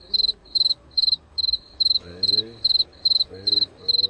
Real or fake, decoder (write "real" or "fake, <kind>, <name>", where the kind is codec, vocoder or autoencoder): fake, codec, DAC